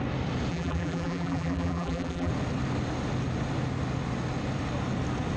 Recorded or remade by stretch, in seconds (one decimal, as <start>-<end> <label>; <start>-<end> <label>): 0.0-0.5 recorded; 0.5-2.3 remade; 2.3-5.4 recorded